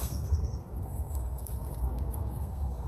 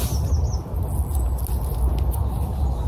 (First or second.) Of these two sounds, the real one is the second